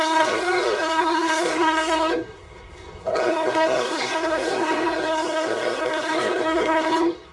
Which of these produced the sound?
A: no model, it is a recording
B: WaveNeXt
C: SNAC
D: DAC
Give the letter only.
C